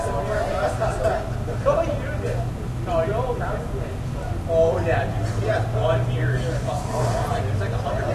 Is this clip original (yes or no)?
yes